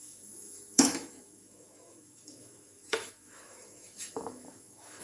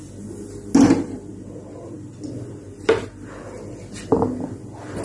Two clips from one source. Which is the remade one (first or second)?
first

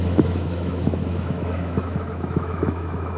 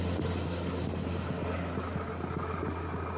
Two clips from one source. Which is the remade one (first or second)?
first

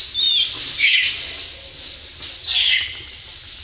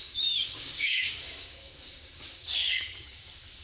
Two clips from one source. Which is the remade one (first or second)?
second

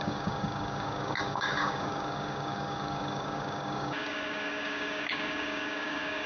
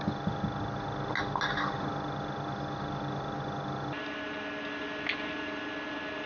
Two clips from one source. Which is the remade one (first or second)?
first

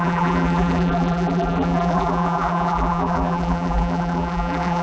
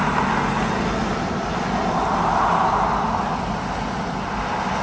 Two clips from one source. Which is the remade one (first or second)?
first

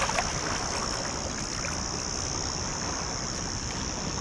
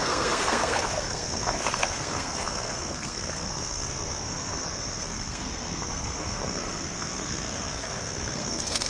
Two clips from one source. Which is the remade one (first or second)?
second